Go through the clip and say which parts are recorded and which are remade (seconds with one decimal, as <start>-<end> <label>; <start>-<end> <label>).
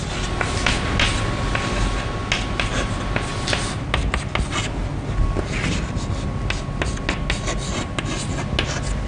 0.0-9.1 recorded